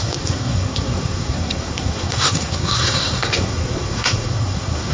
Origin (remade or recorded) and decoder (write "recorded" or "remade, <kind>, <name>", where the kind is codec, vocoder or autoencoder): remade, codec, SNAC